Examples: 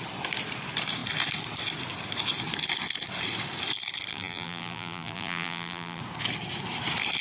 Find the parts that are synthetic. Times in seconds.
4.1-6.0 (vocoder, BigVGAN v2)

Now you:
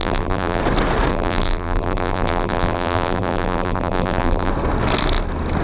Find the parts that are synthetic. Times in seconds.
0.0-0.6 (vocoder, BigVGAN v2); 1.1-4.5

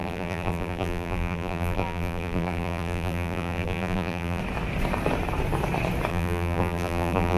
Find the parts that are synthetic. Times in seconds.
0.0-4.4 (vocoder, BigVGAN v2); 6.1-7.4

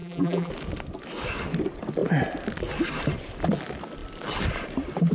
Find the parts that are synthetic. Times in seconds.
0.0-0.5 (vocoder, BigVGAN v2)

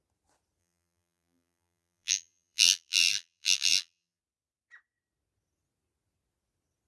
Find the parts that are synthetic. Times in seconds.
0.6-4.2 (vocoder, BigVGAN v2)